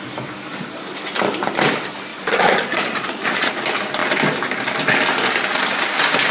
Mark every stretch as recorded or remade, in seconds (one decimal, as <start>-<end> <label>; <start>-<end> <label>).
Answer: 0.0-2.1 recorded; 2.1-3.5 remade; 3.5-6.3 recorded